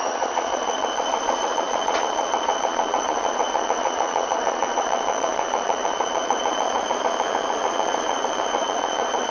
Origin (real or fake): fake